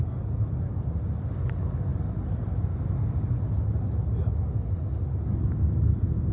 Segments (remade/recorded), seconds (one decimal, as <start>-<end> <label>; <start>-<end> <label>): 0.0-6.3 recorded